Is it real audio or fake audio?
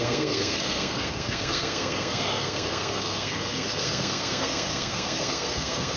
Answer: fake